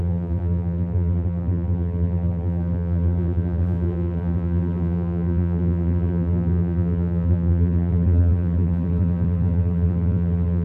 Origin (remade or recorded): remade